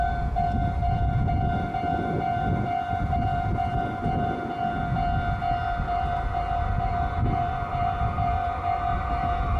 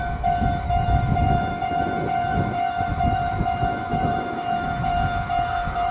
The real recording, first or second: first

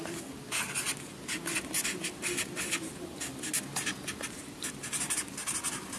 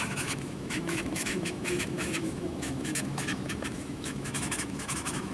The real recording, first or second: first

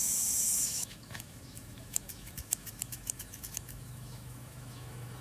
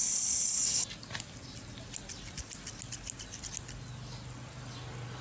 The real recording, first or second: second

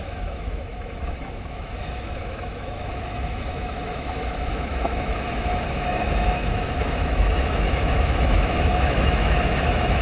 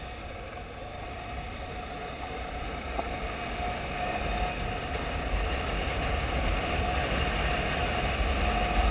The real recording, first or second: second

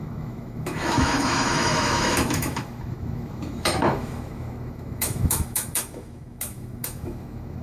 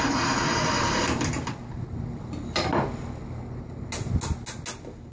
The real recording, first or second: second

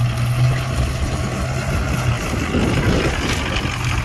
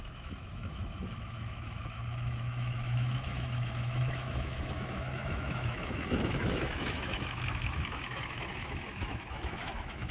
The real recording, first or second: first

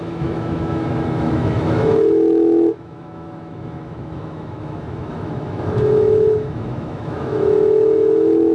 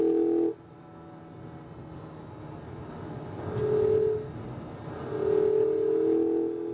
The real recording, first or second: second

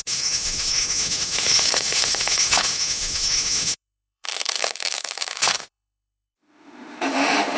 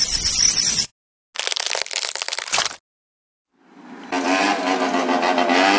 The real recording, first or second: second